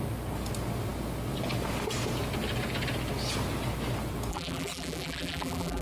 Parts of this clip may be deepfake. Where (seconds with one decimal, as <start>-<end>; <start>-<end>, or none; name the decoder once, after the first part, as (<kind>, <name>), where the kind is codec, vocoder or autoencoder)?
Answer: 4.3-5.8 (vocoder, BigVGAN v2)